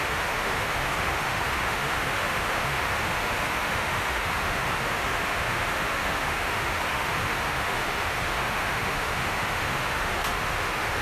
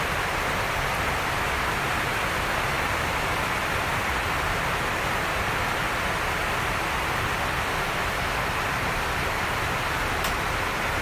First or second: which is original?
second